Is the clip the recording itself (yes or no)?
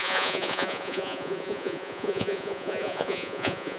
no